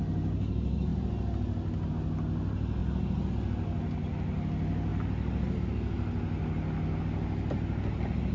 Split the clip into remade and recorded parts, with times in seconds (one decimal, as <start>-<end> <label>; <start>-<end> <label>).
0.0-8.3 recorded